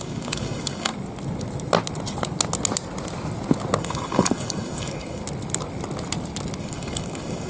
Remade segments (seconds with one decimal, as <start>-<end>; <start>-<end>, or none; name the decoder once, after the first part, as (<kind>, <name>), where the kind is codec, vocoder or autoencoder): 0.0-0.9 (codec, DAC); 3.8-5.2; 6.6-7.5